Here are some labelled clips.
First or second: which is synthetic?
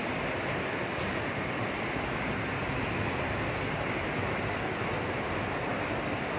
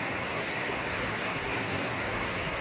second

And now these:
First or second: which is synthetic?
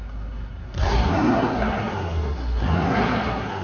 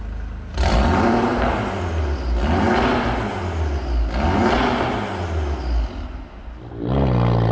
first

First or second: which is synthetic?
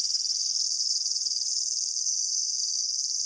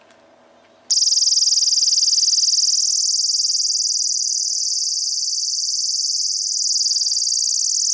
first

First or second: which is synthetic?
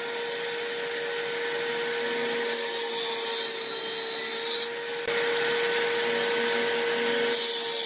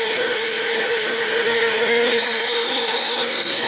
second